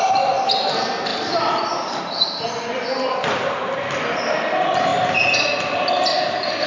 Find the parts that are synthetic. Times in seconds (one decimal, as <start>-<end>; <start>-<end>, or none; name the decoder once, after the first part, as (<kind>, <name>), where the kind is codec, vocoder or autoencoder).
none

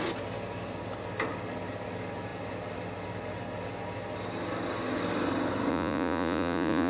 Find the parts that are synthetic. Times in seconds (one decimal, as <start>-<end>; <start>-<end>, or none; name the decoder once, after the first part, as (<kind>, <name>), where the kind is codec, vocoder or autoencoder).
5.7-6.9 (vocoder, Vocos)

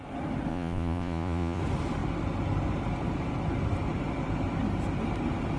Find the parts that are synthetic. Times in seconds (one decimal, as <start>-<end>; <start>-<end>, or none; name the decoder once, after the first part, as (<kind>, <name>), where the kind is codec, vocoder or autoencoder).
0.5-1.6 (vocoder, Vocos)

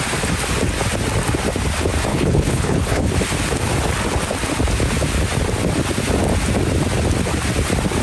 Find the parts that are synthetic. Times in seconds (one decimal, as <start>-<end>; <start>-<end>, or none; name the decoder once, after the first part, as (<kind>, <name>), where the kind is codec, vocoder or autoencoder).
2.1-3.1 (codec, HILCodec)

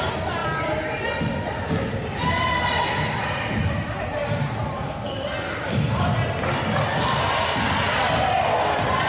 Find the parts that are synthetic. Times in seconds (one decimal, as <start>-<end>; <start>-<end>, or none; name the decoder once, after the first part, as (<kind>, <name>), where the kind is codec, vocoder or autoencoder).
none